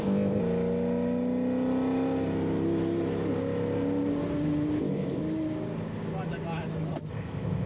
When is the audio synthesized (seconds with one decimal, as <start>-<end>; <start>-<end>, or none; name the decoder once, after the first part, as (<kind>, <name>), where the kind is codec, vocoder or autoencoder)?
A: 0.0-0.4 (codec, ZipCodec); 4.8-5.2; 7.1-7.7